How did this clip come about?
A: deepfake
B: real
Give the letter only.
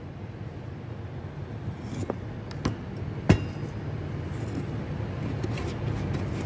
B